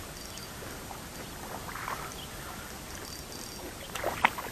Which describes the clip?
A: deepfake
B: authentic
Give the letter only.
B